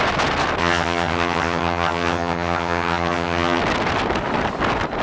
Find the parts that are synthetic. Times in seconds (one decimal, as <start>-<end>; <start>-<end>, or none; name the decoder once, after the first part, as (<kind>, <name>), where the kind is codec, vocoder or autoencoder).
0.6-3.6 (vocoder, HiFi-GAN)